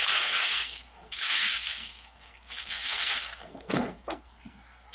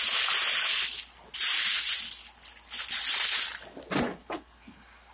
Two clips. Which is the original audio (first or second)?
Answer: second